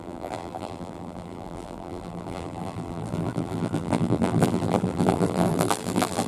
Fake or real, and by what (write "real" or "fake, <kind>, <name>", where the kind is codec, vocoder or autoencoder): fake, vocoder, BigVGAN v2